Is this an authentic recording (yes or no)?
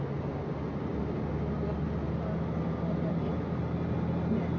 yes